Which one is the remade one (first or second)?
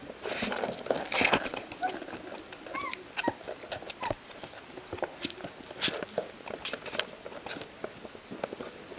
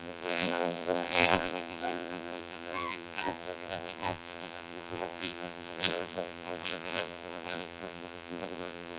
second